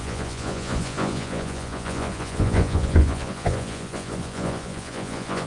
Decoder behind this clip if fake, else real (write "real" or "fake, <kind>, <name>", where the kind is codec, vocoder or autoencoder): fake, vocoder, Vocos